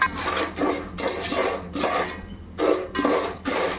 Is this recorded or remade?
recorded